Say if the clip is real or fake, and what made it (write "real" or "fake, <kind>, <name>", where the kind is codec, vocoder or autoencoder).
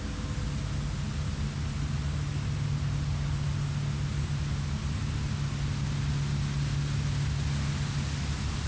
real